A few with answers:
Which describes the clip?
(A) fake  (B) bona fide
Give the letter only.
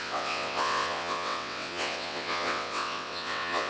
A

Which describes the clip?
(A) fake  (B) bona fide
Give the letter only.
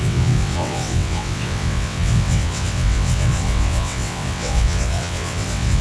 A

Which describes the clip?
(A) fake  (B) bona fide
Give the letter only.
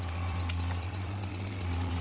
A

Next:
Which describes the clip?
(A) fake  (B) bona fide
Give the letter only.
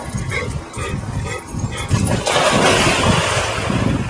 B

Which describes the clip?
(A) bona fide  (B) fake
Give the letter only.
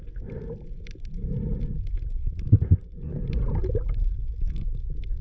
A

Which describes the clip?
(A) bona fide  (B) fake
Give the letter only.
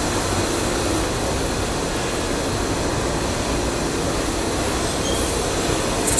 A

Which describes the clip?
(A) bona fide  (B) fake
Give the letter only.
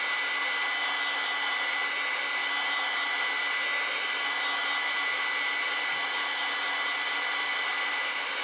A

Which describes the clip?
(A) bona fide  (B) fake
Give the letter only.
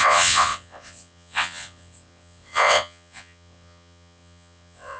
B